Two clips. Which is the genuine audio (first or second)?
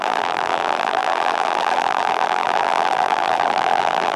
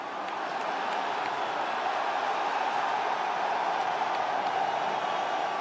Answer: second